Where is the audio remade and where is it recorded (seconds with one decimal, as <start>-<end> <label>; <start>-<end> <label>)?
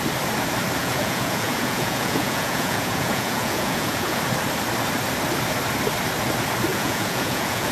0.0-0.8 recorded; 0.8-4.2 remade; 4.2-6.7 recorded; 6.7-7.7 remade